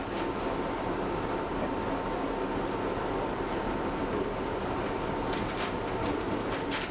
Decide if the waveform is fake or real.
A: real